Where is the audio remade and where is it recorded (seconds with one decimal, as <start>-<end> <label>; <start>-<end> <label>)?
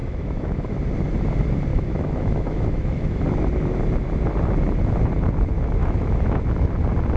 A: 0.0-0.7 remade; 0.7-1.7 recorded; 1.7-3.2 remade; 3.2-5.8 recorded; 5.8-6.4 remade; 6.4-7.2 recorded